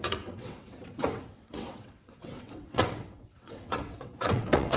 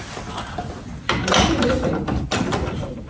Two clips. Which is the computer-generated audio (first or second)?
first